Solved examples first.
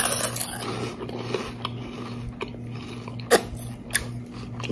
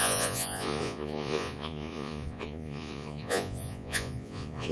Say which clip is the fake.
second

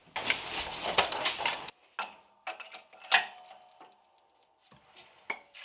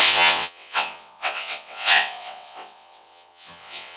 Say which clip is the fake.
second